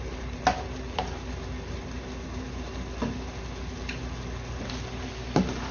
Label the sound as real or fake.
real